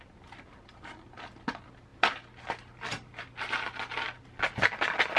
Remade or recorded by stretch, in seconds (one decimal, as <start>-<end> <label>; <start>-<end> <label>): 0.0-5.2 recorded